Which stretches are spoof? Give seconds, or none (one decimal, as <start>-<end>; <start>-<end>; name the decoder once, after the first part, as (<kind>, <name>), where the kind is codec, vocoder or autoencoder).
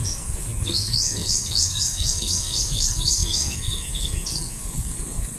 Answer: 0.0-5.4 (codec, SNAC)